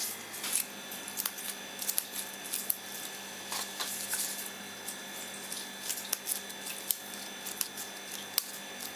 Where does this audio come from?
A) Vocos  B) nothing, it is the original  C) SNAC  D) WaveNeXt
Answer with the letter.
B